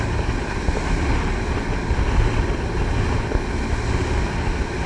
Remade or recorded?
recorded